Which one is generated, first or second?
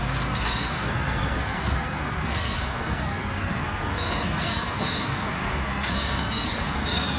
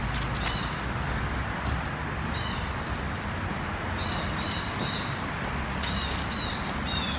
first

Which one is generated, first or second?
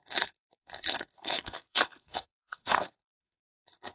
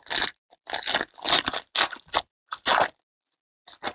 first